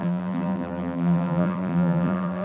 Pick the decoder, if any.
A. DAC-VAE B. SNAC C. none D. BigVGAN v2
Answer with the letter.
D